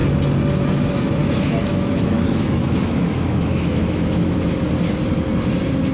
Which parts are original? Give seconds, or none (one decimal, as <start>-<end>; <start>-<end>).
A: 0.0-1.2; 4.7-5.9